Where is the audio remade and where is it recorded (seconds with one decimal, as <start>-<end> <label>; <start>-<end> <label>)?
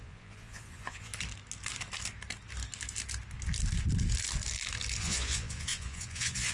0.0-1.1 remade; 1.1-5.0 recorded; 5.0-6.5 remade